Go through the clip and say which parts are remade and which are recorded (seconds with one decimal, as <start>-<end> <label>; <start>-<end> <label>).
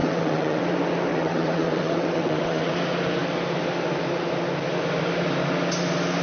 0.0-0.6 remade; 0.6-1.1 recorded; 1.1-2.7 remade; 2.7-6.2 recorded